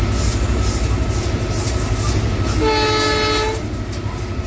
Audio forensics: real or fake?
real